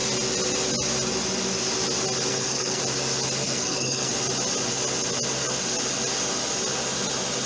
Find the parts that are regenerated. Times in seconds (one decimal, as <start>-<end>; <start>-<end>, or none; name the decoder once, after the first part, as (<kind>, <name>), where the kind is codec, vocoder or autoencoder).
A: 2.3-2.8 (codec, SNAC); 3.4-4.1